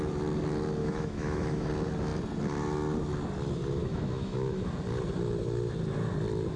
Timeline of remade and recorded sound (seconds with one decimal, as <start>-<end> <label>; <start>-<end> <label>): 0.0-0.8 recorded; 0.8-1.7 remade; 1.7-3.8 recorded; 3.8-4.6 remade; 4.6-6.6 recorded